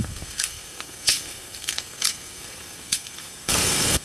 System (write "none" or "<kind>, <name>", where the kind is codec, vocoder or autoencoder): codec, SNAC